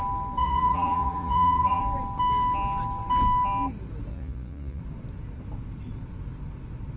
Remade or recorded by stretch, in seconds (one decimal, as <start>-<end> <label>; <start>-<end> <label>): 0.0-0.4 recorded; 0.4-1.8 remade; 1.8-4.1 recorded; 4.1-4.8 remade; 4.8-7.0 recorded